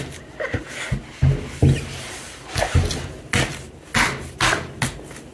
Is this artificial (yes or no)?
no